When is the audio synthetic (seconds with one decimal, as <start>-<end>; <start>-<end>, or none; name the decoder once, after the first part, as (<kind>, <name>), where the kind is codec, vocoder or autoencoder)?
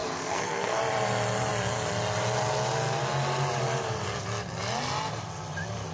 0.0-0.8 (codec, SNAC)